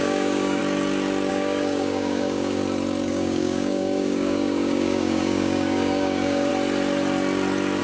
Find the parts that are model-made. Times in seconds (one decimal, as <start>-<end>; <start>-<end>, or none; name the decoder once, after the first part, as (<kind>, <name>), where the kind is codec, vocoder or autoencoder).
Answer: 0.0-0.6 (codec, DAC); 1.3-2.6; 3.1-6.5